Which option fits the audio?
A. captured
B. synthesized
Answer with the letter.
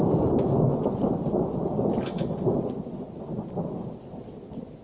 A